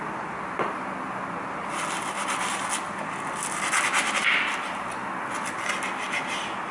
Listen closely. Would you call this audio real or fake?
real